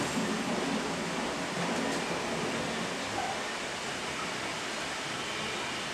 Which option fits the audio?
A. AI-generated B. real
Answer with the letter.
B